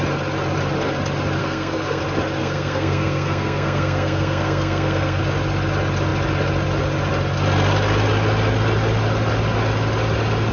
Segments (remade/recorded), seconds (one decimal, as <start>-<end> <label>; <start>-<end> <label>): 0.0-1.4 recorded; 1.4-2.0 remade; 2.0-2.4 recorded; 2.4-5.2 remade; 5.2-10.5 recorded